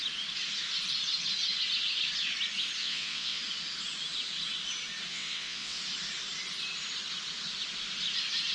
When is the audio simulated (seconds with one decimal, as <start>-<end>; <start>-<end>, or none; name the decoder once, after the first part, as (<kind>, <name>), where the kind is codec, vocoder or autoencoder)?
2.8-3.4 (vocoder, WaveNeXt); 5.1-5.8